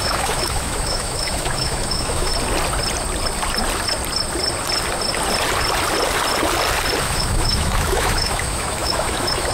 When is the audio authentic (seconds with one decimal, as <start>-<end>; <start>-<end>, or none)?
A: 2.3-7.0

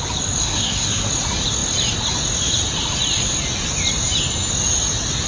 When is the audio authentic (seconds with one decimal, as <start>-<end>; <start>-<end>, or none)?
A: 0.0-0.4; 1.1-5.3

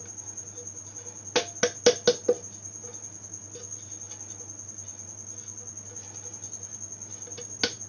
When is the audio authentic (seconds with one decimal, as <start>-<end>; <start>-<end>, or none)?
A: 0.0-7.9

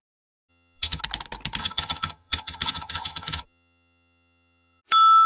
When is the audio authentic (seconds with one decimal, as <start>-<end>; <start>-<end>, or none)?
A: 0.0-0.5; 1.0-1.6; 4.8-5.3

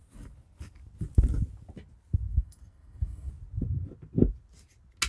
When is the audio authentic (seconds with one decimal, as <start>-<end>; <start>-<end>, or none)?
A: 0.0-2.3; 3.3-5.1

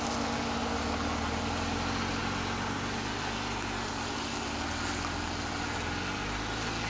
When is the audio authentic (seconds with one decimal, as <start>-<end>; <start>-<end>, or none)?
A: 0.0-6.9